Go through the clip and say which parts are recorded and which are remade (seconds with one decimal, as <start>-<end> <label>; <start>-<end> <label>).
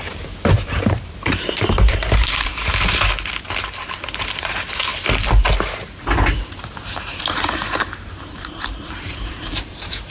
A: 0.0-2.5 remade; 2.5-4.4 recorded; 4.4-4.9 remade; 4.9-7.0 recorded; 7.0-10.1 remade